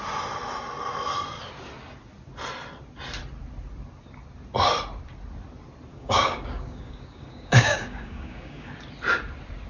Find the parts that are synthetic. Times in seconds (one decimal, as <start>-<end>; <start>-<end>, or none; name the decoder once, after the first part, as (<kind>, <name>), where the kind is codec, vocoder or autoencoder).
5.9-8.7 (codec, DAC)